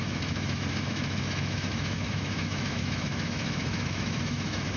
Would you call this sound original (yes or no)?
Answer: no